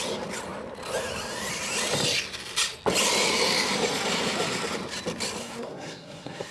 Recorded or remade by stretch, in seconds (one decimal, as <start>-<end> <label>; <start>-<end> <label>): 0.0-5.4 recorded; 5.4-6.5 remade